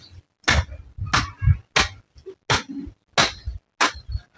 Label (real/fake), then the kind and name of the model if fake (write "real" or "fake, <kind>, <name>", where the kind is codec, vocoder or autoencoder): real